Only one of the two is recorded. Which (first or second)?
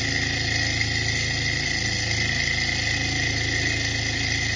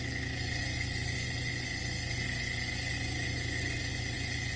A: first